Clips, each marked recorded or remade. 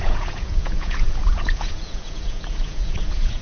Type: remade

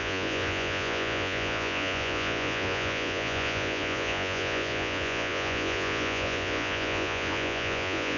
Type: remade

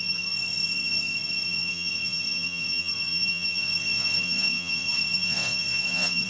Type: remade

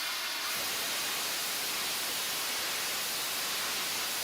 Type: recorded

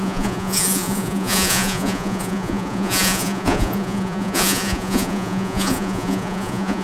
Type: remade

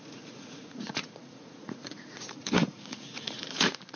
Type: remade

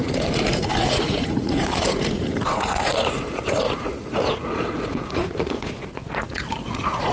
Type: remade